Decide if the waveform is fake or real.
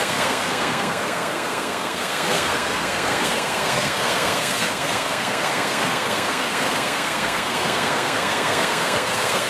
fake